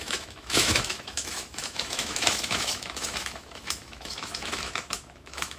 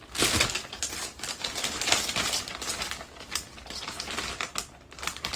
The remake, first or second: first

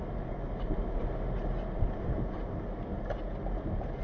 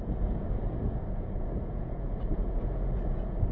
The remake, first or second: second